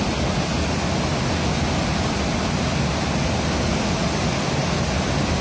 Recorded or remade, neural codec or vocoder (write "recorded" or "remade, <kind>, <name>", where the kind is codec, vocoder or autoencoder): recorded